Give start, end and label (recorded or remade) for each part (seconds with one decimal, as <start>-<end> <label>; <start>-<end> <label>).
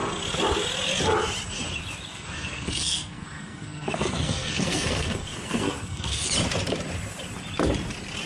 0.0-2.1 recorded; 2.1-6.3 remade; 6.3-8.3 recorded